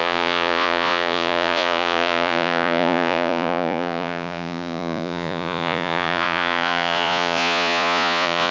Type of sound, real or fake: fake